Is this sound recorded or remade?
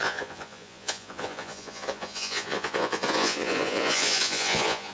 remade